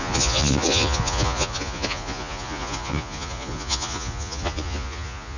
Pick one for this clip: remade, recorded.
remade